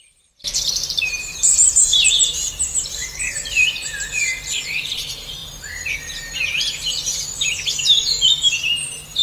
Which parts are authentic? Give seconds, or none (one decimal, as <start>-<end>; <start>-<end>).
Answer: 3.6-4.2; 5.4-7.8